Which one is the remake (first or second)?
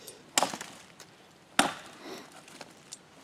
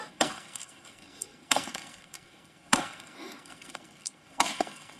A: second